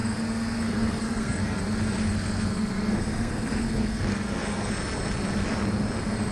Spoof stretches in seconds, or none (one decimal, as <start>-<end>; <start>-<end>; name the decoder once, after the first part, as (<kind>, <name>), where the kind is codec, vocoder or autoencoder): 0.0-1.6 (codec, SNAC); 2.1-4.7